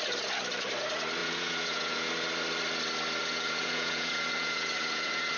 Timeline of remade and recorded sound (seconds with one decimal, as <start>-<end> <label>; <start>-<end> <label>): 0.0-1.2 recorded; 1.2-2.1 remade; 2.1-3.2 recorded; 3.2-5.4 remade